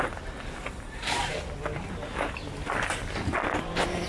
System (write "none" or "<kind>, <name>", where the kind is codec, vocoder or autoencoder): none